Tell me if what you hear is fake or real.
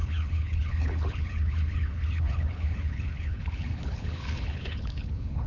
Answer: fake